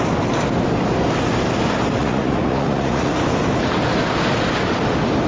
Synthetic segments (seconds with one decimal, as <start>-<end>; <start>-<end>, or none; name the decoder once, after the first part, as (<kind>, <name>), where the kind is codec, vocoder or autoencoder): 2.0-3.1 (vocoder, Vocos)